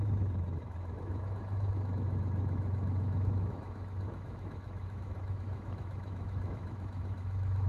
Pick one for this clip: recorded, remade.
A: remade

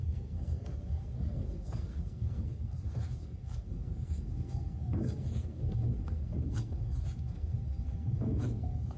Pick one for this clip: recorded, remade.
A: remade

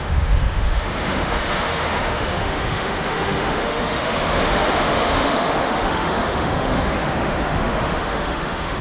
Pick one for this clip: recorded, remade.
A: remade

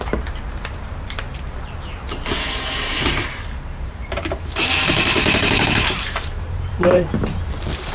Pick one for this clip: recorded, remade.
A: remade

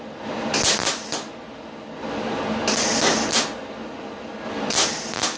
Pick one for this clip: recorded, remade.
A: recorded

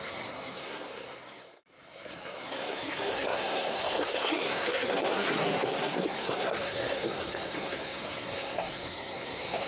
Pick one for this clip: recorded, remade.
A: remade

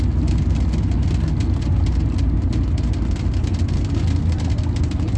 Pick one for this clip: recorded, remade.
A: recorded